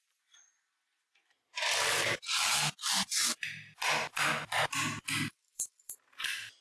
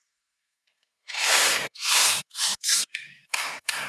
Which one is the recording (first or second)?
first